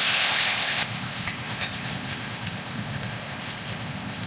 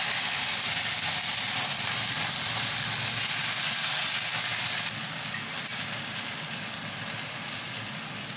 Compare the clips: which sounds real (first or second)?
second